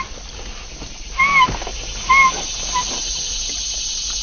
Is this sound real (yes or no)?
yes